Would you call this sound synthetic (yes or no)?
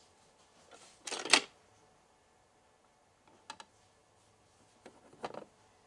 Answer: no